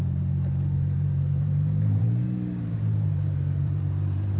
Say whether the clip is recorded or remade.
remade